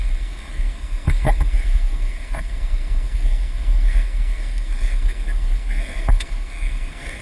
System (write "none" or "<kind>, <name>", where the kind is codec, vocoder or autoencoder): codec, SNAC